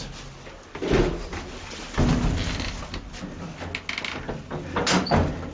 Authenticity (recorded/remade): recorded